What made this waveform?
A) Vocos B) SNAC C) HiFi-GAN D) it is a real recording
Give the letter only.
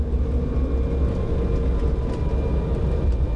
D